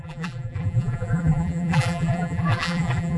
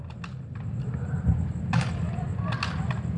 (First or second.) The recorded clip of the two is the second